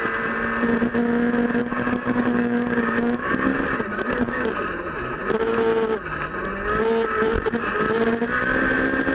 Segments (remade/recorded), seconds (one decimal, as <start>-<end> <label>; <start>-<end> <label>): 0.0-1.6 recorded; 1.6-3.5 remade; 3.5-3.9 recorded; 3.9-4.5 remade; 4.5-9.1 recorded